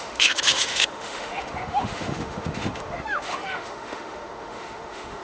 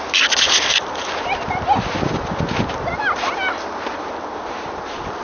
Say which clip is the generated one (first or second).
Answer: first